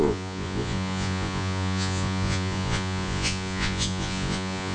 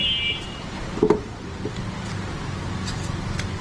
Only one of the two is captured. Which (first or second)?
second